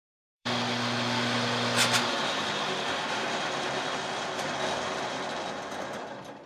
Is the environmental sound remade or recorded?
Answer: remade